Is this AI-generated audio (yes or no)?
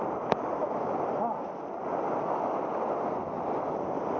no